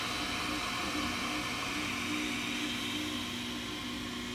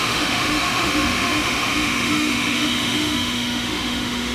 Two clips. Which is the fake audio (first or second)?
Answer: second